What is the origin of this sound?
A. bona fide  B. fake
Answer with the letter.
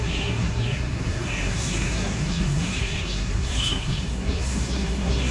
B